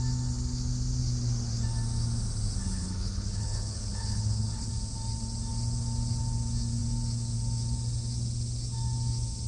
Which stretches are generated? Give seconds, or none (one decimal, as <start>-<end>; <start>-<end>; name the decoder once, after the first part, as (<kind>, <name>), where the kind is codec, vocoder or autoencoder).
2.6-4.7 (codec, HILCodec)

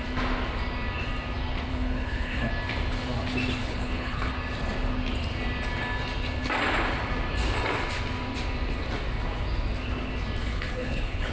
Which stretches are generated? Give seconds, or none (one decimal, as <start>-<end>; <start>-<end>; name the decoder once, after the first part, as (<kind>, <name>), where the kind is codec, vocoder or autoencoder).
1.7-2.5 (codec, HILCodec); 3.6-4.3; 10.4-11.3